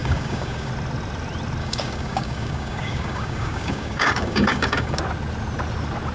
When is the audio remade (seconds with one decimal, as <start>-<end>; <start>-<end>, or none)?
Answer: 0.0-0.7; 1.6-5.0

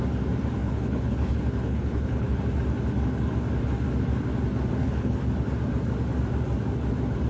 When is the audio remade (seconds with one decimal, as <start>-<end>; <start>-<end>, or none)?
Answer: 0.6-2.4; 4.8-5.3

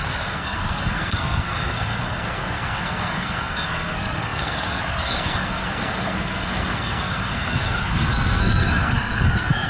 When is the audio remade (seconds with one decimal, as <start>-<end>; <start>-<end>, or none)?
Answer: 0.0-9.7

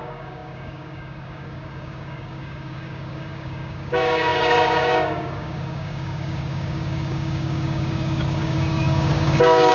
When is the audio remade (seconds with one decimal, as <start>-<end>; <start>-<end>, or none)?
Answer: 0.0-9.7

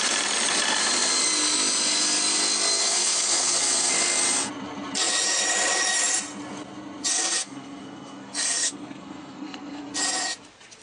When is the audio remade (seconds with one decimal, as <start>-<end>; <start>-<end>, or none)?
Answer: 2.8-3.9; 7.1-9.9